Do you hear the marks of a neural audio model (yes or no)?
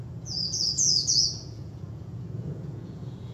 yes